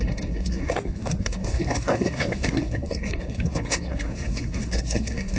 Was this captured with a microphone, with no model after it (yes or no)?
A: no